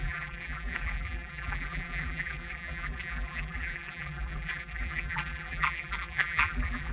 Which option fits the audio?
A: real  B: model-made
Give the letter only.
B